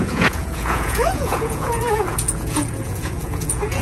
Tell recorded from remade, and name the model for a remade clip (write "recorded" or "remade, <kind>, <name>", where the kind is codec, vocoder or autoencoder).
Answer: remade, vocoder, Vocos